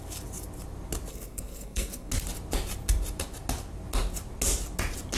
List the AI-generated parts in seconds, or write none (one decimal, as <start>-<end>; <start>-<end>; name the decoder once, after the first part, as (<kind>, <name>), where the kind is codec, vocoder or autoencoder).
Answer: 1.1-2.1 (codec, SNAC)